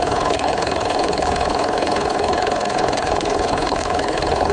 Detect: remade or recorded remade